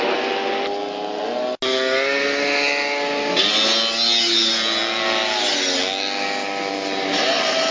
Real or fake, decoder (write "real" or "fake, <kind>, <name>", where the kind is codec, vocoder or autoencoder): real